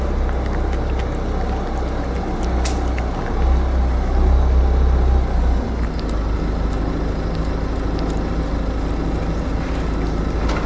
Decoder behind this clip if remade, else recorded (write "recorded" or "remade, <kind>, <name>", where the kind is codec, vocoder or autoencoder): recorded